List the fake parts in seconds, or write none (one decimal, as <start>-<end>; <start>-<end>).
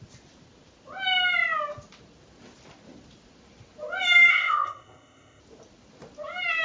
4.3-5.4